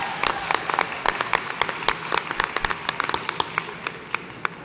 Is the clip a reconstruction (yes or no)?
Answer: no